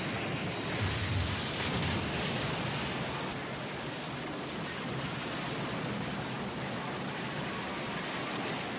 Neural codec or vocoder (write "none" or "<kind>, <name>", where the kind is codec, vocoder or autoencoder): none